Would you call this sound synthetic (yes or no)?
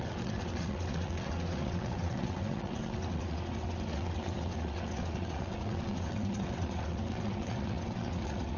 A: yes